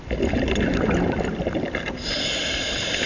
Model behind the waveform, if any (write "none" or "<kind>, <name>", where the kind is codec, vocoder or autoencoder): none